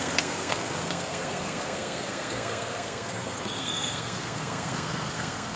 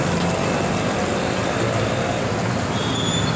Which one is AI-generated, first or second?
first